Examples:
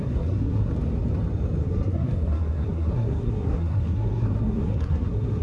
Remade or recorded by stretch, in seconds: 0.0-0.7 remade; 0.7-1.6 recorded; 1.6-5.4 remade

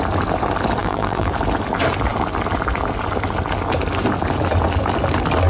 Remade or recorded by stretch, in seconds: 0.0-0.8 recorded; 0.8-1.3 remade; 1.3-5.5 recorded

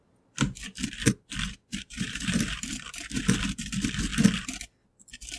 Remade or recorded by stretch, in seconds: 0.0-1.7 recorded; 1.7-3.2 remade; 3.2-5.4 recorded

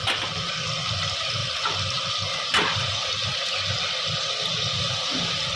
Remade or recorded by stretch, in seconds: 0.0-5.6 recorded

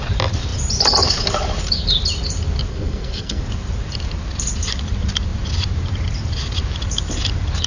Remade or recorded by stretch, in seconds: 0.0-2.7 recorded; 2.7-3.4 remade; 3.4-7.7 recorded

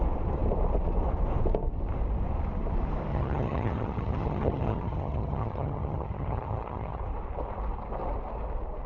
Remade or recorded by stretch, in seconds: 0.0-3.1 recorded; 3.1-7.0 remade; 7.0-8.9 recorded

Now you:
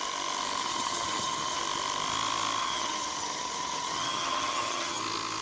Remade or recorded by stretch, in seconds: 0.0-0.6 recorded; 0.6-1.6 remade; 1.6-2.6 recorded; 2.6-5.0 remade; 5.0-5.4 recorded

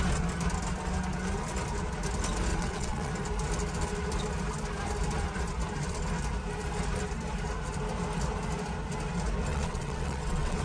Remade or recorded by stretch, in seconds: 0.0-2.5 recorded; 2.5-3.1 remade; 3.1-9.5 recorded; 9.5-10.6 remade